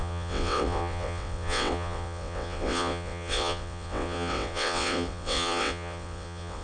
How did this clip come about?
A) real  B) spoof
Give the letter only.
B